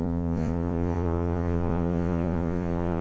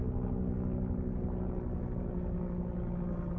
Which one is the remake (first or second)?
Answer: first